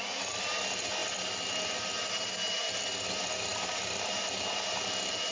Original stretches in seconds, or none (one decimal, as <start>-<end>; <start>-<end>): 0.0-5.3